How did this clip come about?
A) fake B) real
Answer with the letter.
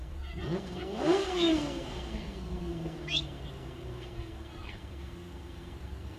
A